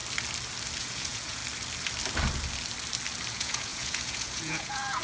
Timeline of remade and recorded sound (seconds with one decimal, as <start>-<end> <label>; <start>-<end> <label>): 0.0-0.8 recorded; 0.8-1.4 remade; 1.4-3.3 recorded; 3.3-5.0 remade